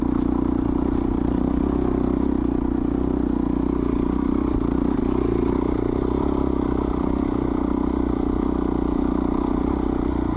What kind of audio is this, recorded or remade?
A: recorded